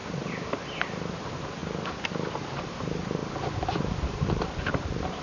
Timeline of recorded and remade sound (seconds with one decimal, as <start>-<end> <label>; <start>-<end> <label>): 0.0-0.8 recorded; 0.8-1.6 remade; 1.6-2.6 recorded; 2.6-3.2 remade; 3.2-3.8 recorded; 3.8-5.2 remade